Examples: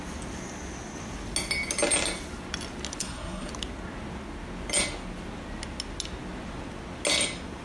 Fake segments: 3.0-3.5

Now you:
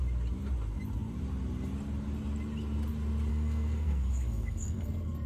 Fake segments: 3.3-5.3

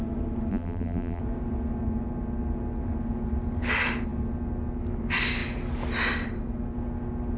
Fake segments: 0.5-1.2

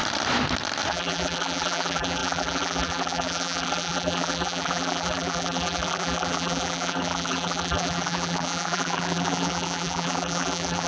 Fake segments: 0.9-10.9